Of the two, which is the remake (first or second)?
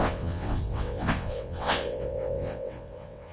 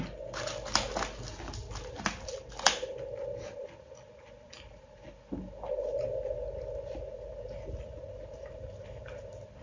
first